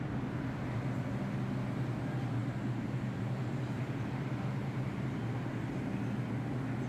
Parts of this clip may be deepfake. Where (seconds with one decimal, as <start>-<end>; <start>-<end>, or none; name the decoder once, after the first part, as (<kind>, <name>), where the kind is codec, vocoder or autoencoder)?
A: 2.4-4.9 (vocoder, BigVGAN v2)